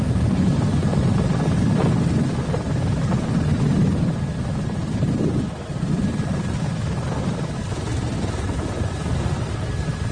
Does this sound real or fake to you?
real